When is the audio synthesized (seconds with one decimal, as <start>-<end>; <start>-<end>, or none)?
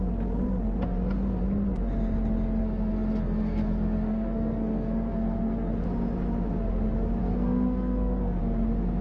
2.6-5.7; 7.2-8.4